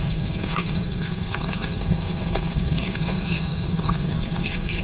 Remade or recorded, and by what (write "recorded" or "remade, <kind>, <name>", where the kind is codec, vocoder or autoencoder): remade, codec, SNAC